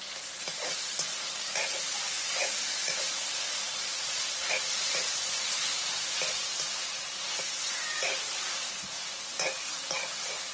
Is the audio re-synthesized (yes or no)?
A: no